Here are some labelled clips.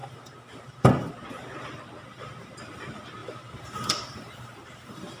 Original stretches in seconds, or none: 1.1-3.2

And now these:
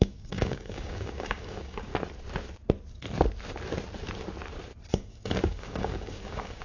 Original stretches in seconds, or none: 1.9-4.9

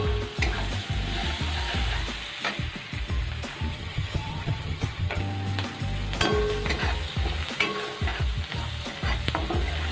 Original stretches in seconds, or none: 0.0-3.7; 5.2-9.9

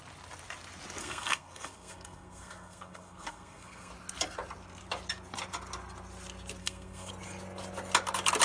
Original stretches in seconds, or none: 0.0-1.0; 3.9-6.6; 7.1-8.4

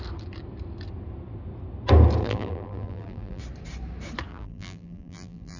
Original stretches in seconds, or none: 0.0-2.2; 3.4-4.3